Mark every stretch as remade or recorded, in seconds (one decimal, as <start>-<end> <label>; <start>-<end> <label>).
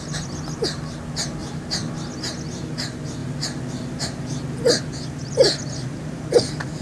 0.0-1.4 recorded; 1.4-1.9 remade; 1.9-5.2 recorded; 5.2-6.2 remade; 6.2-6.8 recorded